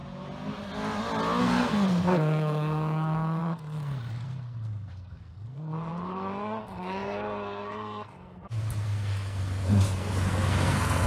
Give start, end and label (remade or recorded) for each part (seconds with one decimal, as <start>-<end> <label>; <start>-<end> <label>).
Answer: 0.0-1.4 recorded; 1.4-11.1 remade